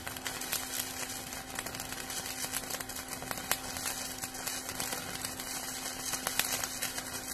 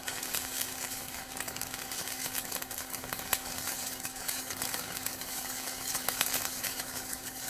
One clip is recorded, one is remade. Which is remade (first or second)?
second